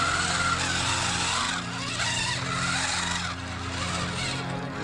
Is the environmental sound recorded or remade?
recorded